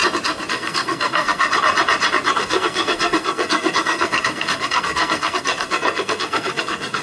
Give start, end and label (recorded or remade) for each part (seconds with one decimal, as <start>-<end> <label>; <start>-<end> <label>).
0.0-0.5 recorded; 0.5-1.5 remade; 1.5-2.4 recorded; 2.4-7.0 remade